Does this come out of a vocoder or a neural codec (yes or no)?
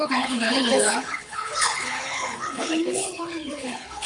yes